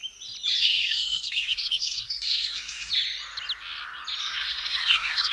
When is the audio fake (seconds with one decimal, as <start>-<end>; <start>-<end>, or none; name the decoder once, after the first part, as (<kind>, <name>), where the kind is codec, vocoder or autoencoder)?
0.6-2.9 (codec, SNAC); 4.2-5.3